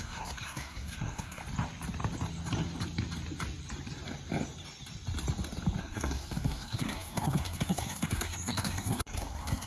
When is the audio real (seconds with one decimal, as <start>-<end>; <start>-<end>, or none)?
1.4-5.8